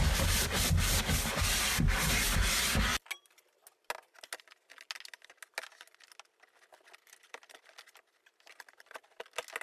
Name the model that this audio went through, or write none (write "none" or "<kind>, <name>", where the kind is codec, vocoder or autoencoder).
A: none